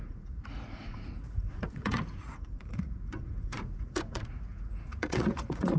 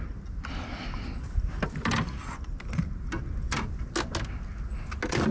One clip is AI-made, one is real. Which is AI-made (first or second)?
first